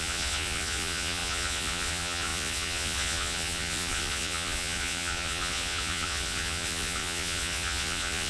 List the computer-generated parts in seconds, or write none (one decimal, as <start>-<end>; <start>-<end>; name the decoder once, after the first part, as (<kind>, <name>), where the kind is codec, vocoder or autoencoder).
0.0-8.3 (vocoder, Vocos)